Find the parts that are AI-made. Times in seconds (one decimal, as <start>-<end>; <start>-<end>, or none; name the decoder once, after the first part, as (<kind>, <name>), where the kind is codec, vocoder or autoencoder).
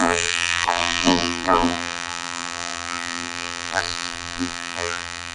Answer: 0.0-5.3 (vocoder, BigVGAN v2)